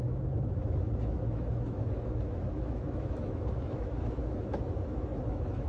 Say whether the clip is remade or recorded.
remade